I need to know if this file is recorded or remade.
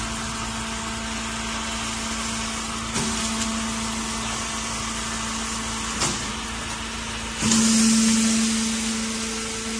recorded